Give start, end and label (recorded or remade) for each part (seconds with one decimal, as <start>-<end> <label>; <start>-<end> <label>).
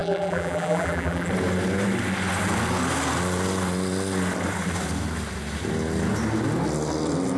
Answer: 0.0-1.3 remade; 1.3-7.4 recorded